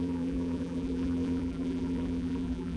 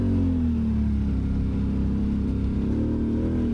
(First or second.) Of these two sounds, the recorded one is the second